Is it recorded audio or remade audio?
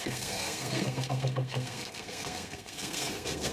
remade